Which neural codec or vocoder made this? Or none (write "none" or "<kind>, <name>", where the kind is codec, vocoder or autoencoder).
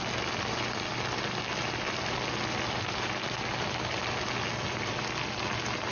none